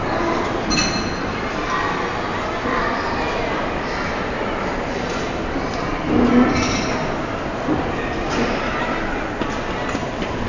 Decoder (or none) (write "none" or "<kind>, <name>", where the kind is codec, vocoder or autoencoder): none